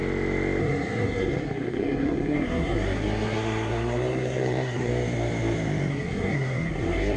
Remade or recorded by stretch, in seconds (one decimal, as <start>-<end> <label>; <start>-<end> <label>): 0.0-0.6 recorded; 0.6-4.9 remade; 4.9-5.9 recorded; 5.9-7.2 remade